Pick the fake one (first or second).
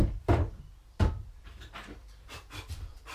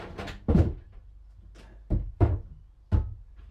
first